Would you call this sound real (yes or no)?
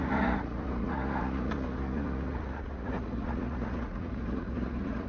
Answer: no